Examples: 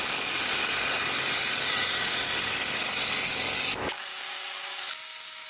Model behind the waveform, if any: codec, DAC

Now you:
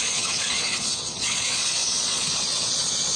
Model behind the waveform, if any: vocoder, Vocos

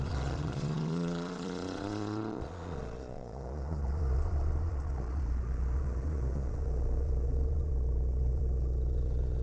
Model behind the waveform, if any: vocoder, Vocos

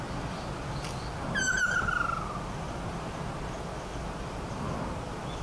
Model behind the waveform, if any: none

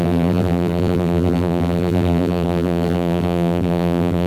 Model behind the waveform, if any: vocoder, BigVGAN v2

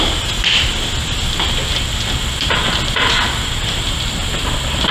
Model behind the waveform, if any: none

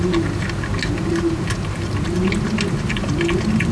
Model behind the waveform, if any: none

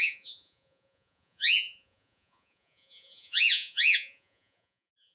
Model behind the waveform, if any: vocoder, Vocos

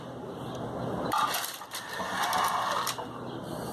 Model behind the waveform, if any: none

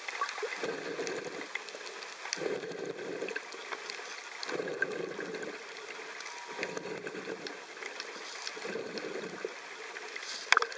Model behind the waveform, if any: none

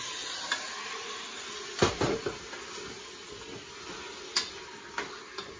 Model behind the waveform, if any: none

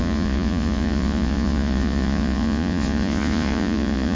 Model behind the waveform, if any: vocoder, Vocos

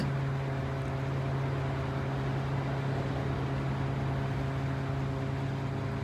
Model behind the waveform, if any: none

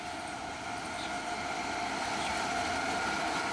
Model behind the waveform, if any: none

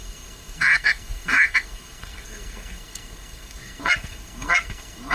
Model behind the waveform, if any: codec, SNAC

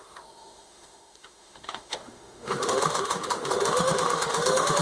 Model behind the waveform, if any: autoencoder, DAC-VAE